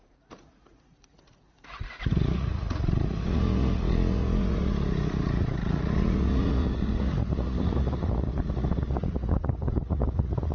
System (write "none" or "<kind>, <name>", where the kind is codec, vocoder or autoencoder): vocoder, Vocos